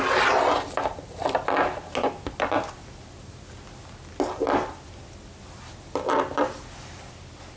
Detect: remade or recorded recorded